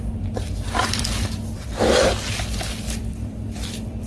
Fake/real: fake